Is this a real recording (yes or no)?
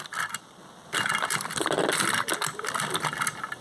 yes